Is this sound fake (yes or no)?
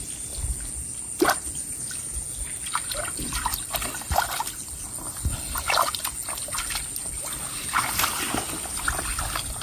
no